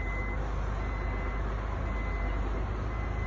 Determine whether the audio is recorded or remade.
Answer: recorded